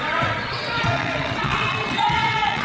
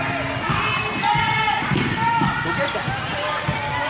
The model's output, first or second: first